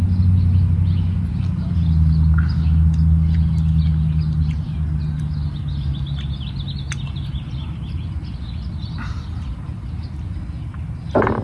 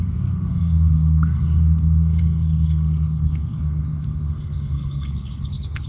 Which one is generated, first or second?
second